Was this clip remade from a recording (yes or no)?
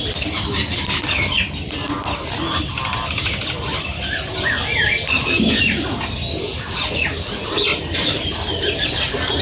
no